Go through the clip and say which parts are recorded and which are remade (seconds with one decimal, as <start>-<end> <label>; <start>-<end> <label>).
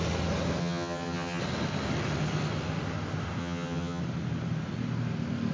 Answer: 0.0-0.6 recorded; 0.6-1.4 remade; 1.4-3.4 recorded; 3.4-4.0 remade; 4.0-5.5 recorded